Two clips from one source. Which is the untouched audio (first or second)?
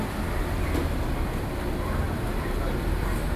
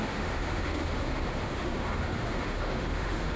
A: first